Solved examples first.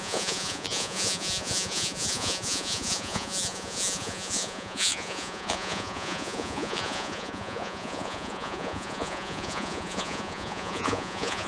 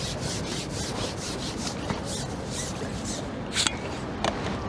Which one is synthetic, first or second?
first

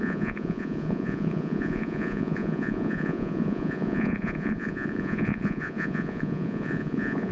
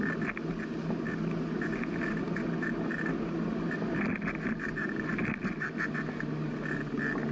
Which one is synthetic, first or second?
first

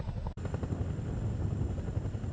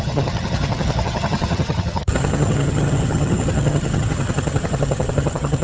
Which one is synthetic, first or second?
second